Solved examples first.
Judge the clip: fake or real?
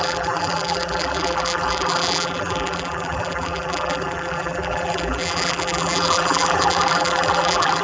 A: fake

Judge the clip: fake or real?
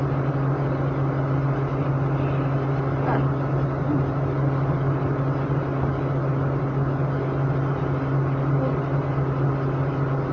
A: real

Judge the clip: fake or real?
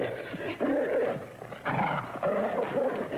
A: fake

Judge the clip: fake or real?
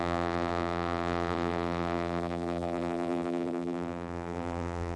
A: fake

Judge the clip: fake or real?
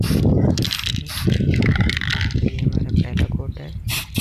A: real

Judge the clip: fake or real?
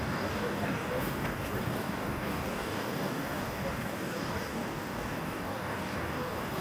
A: fake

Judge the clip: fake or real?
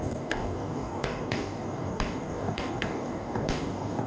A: fake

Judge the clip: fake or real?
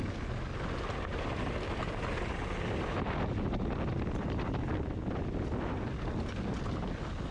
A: real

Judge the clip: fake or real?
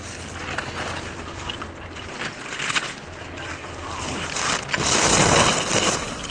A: real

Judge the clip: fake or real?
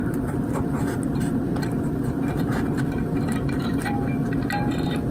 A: fake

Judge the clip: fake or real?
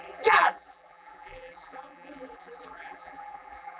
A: fake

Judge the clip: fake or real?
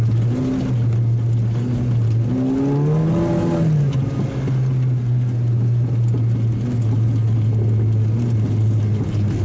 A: real